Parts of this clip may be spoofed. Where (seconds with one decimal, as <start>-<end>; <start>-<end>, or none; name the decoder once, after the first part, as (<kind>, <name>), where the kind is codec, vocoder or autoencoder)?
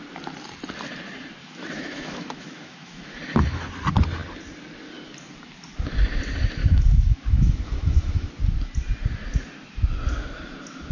1.4-3.2 (autoencoder, DAC-VAE); 6.6-8.3